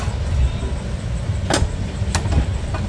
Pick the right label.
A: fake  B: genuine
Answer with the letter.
B